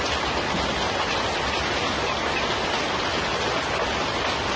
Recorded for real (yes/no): yes